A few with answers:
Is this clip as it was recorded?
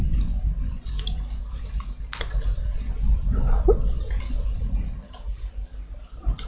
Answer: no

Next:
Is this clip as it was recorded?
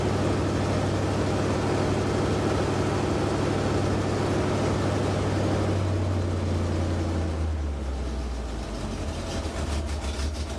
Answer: yes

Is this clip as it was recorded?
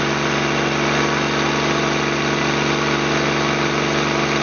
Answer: yes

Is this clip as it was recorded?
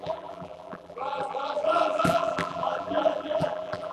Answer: no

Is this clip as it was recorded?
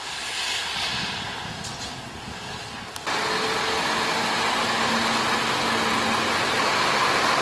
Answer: yes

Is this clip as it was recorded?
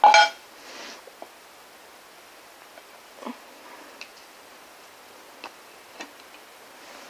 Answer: yes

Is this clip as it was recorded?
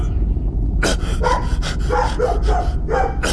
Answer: yes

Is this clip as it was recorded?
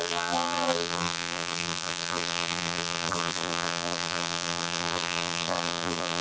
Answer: no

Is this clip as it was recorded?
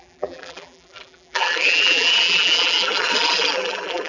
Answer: no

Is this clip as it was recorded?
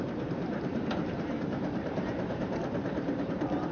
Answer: no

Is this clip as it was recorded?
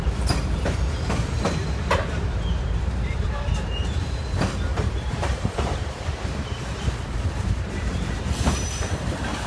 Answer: no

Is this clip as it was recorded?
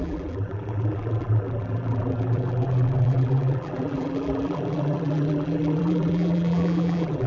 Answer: no